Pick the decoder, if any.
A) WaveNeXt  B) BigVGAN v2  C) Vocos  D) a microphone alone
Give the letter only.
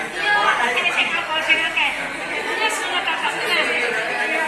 D